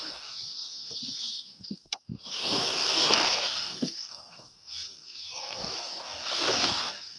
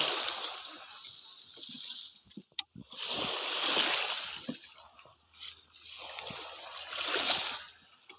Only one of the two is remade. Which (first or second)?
first